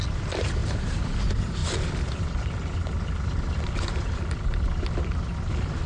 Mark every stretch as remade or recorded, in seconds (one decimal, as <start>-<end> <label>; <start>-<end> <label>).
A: 0.0-0.6 recorded; 0.6-1.2 remade; 1.2-5.9 recorded